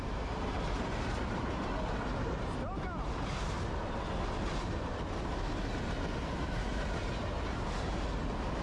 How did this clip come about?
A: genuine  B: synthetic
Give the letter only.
A